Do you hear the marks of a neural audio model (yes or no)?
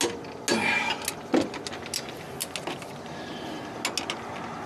no